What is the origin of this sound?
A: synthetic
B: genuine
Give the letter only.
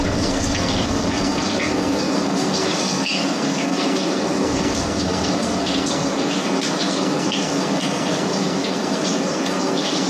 A